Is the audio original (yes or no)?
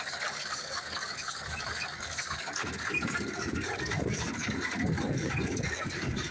no